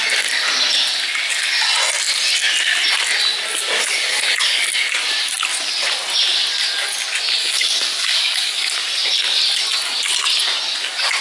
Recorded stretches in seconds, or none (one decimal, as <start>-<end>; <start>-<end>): 0.0-3.8; 4.6-7.4; 8.7-11.2